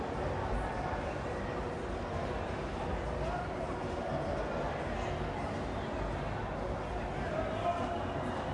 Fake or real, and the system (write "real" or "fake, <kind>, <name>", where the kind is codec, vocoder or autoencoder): real